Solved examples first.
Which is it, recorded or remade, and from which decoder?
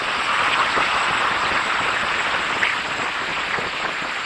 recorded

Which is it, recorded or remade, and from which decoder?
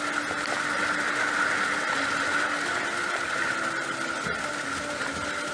recorded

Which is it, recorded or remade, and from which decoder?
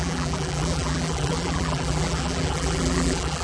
remade, vocoder, BigVGAN v2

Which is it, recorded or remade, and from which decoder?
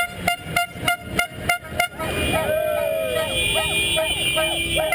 recorded